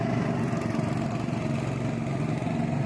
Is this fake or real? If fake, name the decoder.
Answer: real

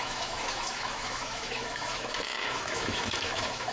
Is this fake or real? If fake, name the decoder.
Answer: fake, autoencoder, DAC-VAE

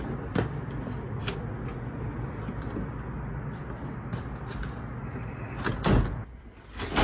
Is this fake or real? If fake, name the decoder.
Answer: real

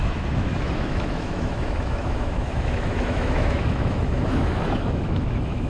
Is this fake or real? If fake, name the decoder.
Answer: fake, autoencoder, DAC-VAE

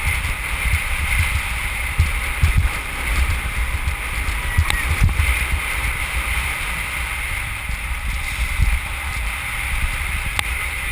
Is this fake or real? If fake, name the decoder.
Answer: real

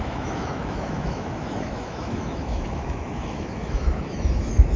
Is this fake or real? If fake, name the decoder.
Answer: fake, autoencoder, DAC-VAE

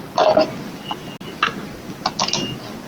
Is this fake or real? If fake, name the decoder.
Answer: real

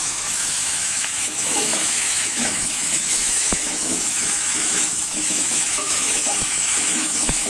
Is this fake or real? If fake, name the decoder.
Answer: fake, autoencoder, DAC-VAE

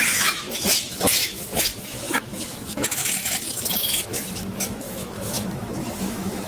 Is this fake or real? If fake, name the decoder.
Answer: fake, autoencoder, DAC-VAE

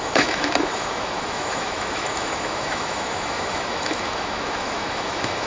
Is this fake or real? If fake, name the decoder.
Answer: fake, autoencoder, DAC-VAE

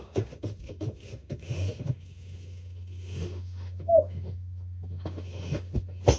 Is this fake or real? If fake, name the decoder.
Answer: fake, autoencoder, DAC-VAE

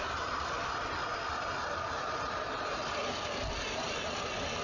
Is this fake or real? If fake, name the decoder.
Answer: real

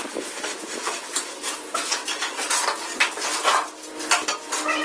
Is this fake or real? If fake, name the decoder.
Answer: real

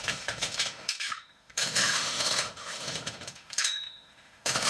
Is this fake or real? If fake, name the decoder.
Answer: fake, autoencoder, DAC-VAE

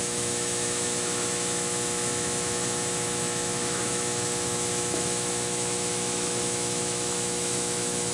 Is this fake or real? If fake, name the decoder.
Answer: fake, autoencoder, DAC-VAE